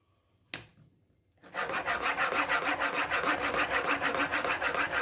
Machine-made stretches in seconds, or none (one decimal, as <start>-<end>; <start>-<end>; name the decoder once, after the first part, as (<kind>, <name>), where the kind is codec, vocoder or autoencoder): none

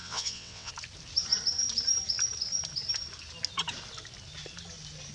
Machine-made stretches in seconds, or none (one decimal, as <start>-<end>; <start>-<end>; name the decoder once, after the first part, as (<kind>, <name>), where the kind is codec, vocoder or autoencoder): 0.0-0.7 (vocoder, WaveNeXt)

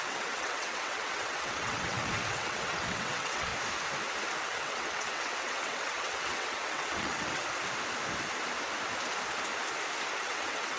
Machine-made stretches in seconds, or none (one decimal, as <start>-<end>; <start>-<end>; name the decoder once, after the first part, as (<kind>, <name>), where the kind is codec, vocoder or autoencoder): 0.0-3.5 (vocoder, WaveNeXt); 4.4-7.4; 10.2-10.8

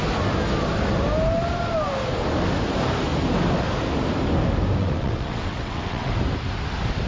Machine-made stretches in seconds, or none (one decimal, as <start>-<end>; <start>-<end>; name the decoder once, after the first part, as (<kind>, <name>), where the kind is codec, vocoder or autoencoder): 4.8-6.1 (vocoder, WaveNeXt)

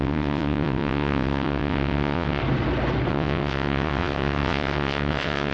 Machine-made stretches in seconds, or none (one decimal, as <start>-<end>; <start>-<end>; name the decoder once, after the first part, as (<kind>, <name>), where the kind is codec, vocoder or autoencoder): 0.0-2.4 (vocoder, WaveNeXt); 3.1-5.5

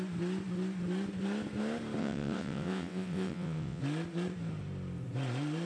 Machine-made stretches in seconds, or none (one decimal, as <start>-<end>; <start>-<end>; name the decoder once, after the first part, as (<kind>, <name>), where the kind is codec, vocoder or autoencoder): 2.0-3.8 (vocoder, WaveNeXt)

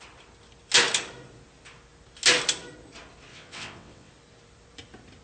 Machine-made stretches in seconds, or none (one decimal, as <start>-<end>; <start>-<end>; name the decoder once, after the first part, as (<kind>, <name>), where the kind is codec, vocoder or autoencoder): 3.3-4.1 (vocoder, WaveNeXt)

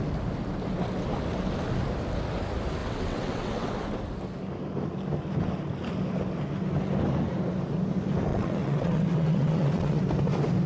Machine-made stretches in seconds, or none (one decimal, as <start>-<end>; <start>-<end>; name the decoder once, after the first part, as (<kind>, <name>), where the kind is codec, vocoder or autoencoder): 2.8-3.7 (vocoder, WaveNeXt); 8.3-10.0